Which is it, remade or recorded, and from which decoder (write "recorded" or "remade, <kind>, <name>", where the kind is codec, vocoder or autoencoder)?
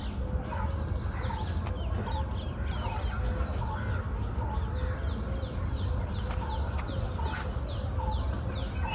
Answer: recorded